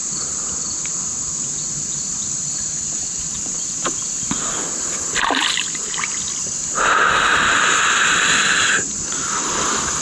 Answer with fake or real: real